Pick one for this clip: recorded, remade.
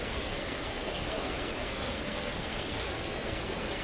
remade